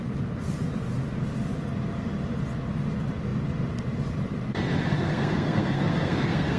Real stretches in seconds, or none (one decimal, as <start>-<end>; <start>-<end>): 0.0-4.9